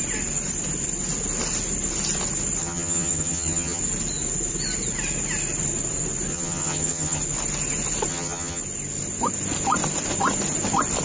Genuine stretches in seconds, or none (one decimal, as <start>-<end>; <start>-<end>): 0.0-2.6; 3.8-6.3; 7.2-8.1; 8.6-11.0